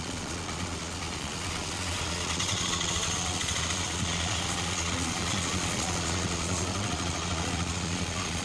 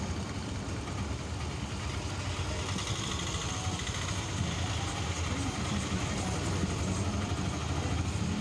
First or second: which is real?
second